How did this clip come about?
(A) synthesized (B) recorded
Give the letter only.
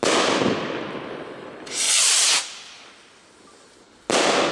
B